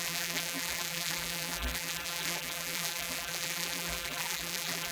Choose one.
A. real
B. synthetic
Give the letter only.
B